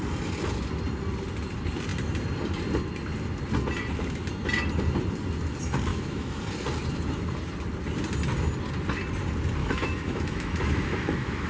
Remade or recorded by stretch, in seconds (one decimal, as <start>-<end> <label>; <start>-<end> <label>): 0.0-5.9 recorded; 5.9-6.4 remade; 6.4-9.6 recorded; 9.6-11.5 remade